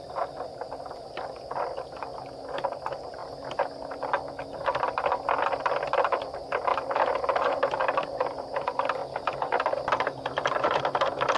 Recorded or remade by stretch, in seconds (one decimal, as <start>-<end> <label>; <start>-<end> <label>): 0.0-2.1 remade; 2.1-2.7 recorded; 2.7-3.2 remade; 3.2-5.4 recorded; 5.4-6.7 remade; 6.7-7.8 recorded; 7.8-11.4 remade